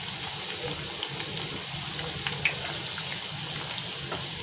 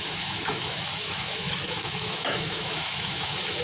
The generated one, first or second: second